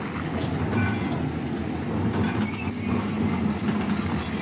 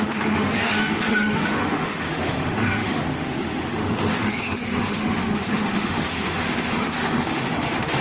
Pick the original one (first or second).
first